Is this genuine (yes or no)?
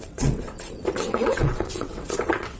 no